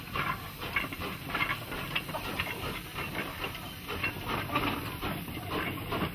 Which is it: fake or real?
fake